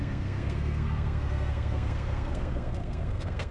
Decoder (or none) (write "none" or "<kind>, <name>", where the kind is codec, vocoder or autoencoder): codec, SNAC